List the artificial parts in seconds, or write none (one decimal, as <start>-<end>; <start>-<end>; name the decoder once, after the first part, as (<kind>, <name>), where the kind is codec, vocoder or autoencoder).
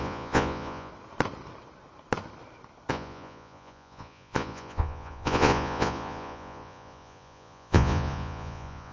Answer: 0.0-0.9 (vocoder, Vocos); 2.9-8.9